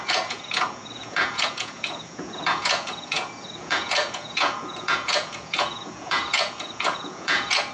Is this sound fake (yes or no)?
yes